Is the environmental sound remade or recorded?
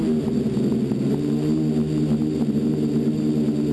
recorded